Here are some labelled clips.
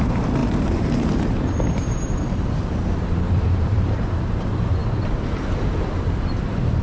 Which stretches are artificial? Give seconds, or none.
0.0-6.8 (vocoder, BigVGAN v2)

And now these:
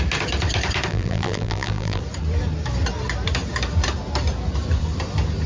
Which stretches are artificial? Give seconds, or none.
0.9-2.0 (vocoder, BigVGAN v2)

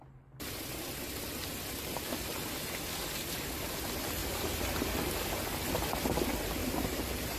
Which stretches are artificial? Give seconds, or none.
4.2-5.0 (vocoder, BigVGAN v2); 6.6-7.4

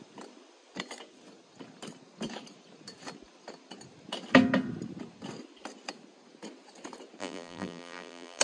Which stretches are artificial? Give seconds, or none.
7.2-8.4 (vocoder, BigVGAN v2)

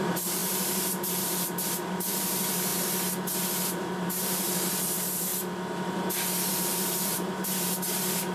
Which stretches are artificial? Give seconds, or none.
0.0-2.7 (vocoder, BigVGAN v2); 3.7-5.3; 6.5-8.3

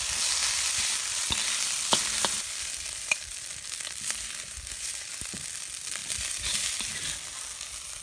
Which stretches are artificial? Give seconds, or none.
0.4-5.2 (vocoder, BigVGAN v2); 6.0-6.9